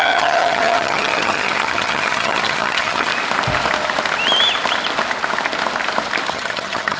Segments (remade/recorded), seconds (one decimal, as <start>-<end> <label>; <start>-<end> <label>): 0.0-3.1 remade; 3.1-6.3 recorded; 6.3-7.0 remade